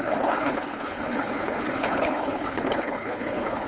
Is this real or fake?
fake